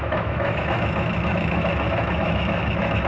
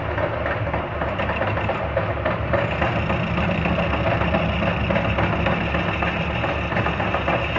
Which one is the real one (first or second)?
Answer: second